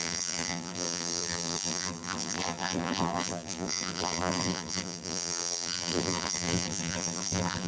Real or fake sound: fake